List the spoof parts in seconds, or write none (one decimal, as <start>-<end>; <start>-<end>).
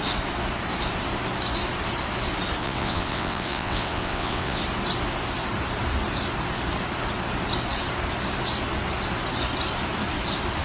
2.6-4.6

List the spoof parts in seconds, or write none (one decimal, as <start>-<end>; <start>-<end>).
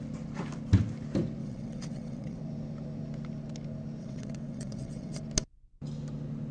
1.4-2.4; 4.0-5.2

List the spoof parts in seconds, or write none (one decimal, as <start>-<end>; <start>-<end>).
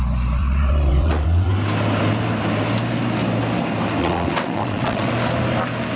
0.4-1.5; 4.0-5.1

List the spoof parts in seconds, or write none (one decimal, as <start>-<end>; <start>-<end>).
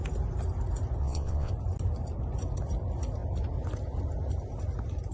1.0-1.5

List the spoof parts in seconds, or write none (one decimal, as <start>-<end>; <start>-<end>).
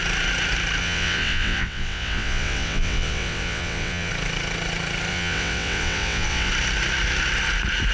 0.8-4.1; 5.1-6.5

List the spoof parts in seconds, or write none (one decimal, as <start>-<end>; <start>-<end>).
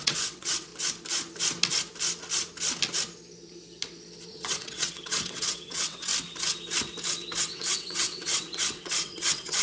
0.0-0.7; 4.3-6.1; 7.4-9.6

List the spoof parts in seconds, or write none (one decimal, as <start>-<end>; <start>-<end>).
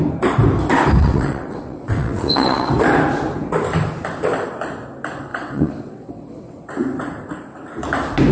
1.0-2.7; 5.3-6.6